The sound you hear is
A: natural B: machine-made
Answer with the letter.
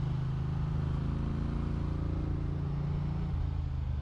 A